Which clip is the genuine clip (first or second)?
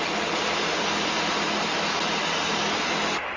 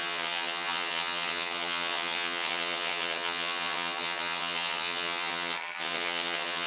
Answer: first